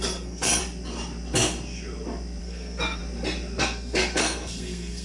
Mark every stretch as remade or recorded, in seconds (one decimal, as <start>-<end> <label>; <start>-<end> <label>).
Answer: 0.0-0.6 remade; 0.6-2.4 recorded; 2.4-3.0 remade; 3.0-3.6 recorded; 3.6-5.0 remade